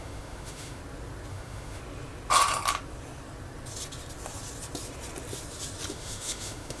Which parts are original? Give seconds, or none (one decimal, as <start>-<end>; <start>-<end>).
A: 0.8-1.3; 1.8-5.9